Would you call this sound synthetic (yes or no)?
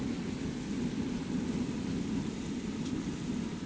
no